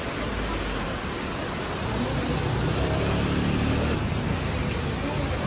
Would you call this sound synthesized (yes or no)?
no